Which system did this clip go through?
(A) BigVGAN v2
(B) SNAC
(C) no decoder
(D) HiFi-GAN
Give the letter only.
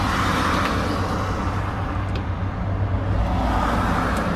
C